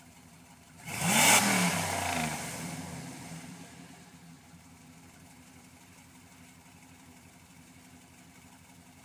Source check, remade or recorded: remade